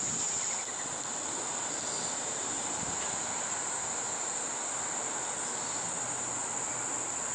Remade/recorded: recorded